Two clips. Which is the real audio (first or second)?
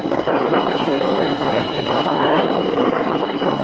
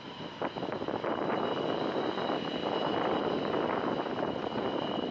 second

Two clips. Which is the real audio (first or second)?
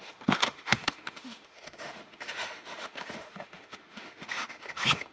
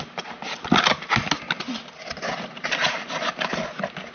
second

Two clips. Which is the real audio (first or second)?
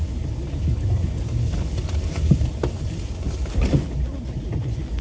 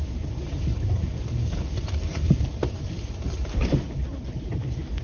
first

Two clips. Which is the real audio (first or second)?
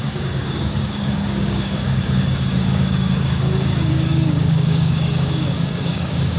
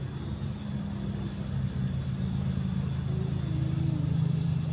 second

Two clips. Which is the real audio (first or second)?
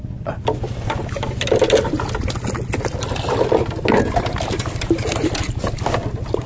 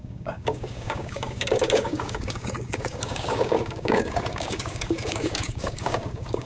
first